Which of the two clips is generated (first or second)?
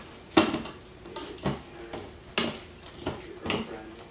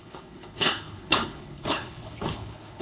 second